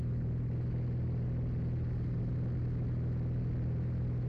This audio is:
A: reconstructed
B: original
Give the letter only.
B